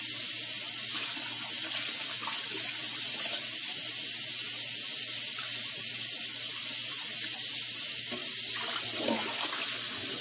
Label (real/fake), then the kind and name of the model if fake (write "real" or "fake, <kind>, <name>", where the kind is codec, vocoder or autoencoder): real